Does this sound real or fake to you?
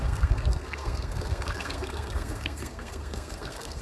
fake